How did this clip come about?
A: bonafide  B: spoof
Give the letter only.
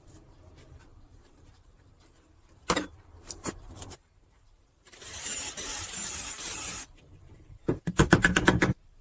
B